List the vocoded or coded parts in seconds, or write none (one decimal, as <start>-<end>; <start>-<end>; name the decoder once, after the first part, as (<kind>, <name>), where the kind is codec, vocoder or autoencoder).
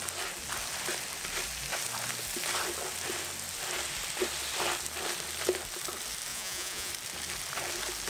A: 6.3-6.9 (vocoder, Vocos)